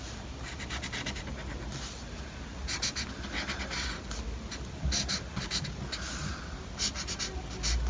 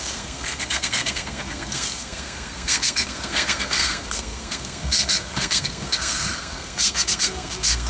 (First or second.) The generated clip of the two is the second